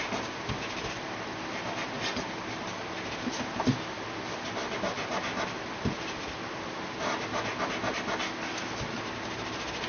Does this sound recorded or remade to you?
recorded